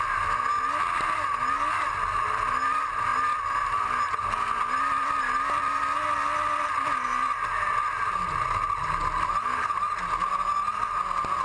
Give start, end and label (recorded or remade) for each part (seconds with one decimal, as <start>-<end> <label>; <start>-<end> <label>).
0.0-11.4 recorded